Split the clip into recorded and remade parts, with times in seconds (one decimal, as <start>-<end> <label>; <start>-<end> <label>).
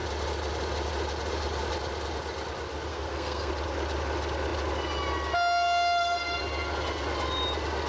0.0-2.9 recorded; 2.9-3.5 remade; 3.5-7.9 recorded